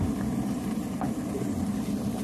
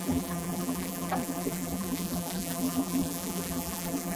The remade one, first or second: second